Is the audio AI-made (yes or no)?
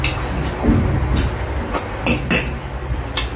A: no